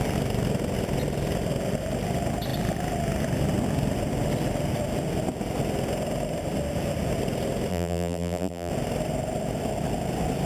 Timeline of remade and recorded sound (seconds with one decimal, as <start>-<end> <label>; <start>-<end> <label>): 0.0-7.7 recorded; 7.7-8.7 remade; 8.7-10.5 recorded